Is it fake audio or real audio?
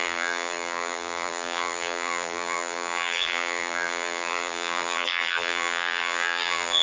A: fake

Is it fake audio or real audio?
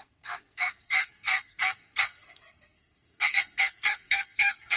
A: fake